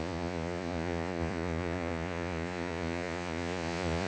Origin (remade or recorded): remade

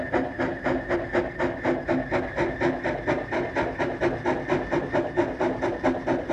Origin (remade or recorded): recorded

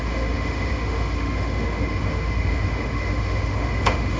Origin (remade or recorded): remade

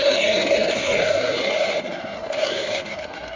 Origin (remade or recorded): remade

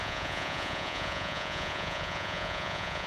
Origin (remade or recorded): remade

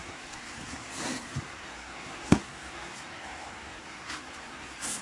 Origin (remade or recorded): remade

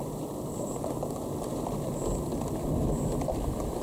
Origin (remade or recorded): recorded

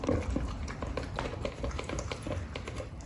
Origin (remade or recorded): recorded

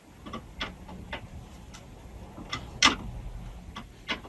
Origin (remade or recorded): recorded